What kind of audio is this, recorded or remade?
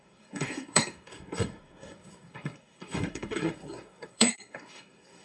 remade